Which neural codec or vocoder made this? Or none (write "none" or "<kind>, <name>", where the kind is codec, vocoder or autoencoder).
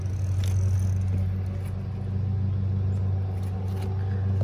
none